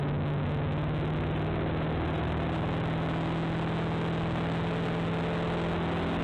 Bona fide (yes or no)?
yes